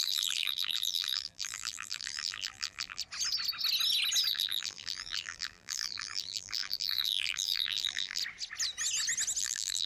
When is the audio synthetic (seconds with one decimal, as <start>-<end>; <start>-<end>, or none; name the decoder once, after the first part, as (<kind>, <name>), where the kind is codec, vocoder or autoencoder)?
0.0-3.0 (vocoder, BigVGAN v2); 4.3-8.2; 9.4-9.9